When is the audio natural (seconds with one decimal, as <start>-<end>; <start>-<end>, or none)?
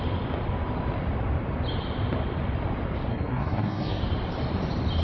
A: 0.0-3.1; 4.0-5.0